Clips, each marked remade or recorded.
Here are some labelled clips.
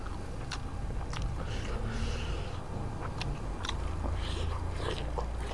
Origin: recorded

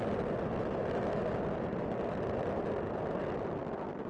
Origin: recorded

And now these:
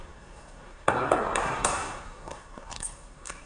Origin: remade